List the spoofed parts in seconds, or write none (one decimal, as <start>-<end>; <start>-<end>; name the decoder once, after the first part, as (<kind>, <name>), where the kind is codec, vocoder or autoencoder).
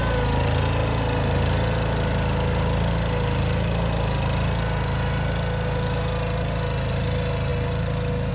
none